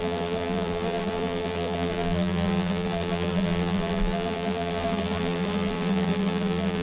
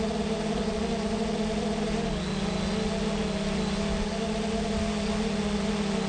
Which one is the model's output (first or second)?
first